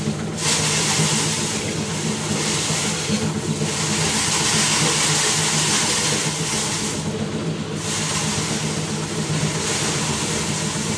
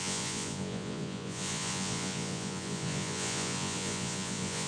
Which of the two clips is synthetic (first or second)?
second